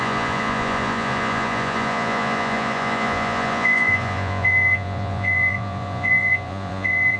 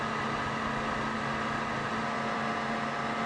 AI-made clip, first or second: first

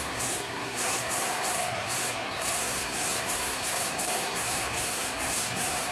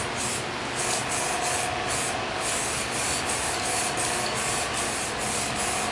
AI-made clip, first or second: first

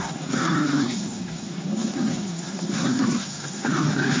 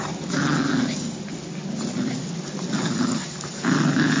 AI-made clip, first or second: first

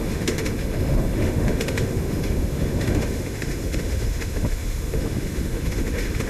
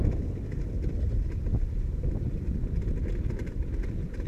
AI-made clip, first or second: first